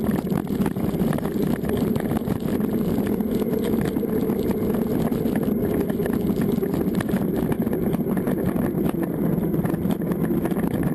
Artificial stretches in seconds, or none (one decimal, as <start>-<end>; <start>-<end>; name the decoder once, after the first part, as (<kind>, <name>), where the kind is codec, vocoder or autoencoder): none